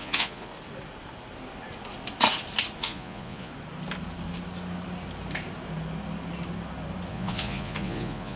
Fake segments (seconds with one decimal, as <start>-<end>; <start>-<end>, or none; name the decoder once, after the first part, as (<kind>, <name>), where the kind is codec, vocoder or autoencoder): 0.0-0.5 (vocoder, Vocos); 2.8-3.5; 7.1-8.4